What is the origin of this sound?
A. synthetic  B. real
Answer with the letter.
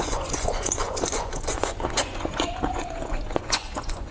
A